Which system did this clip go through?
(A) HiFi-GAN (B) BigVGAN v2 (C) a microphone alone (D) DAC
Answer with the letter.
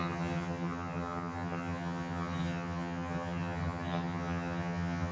A